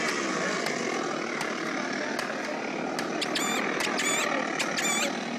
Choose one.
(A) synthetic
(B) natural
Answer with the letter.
B